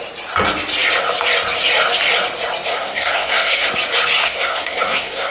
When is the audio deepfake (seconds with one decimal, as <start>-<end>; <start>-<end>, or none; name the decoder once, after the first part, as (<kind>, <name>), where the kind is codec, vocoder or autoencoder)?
2.7-3.7 (codec, SNAC); 4.2-5.3